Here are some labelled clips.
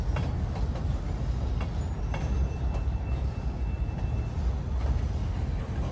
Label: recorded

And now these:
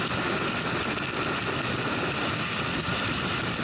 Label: recorded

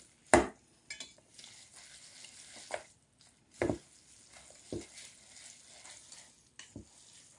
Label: recorded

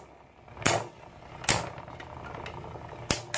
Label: recorded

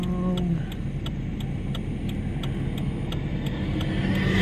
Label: recorded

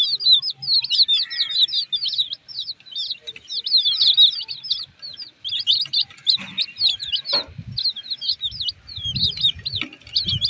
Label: recorded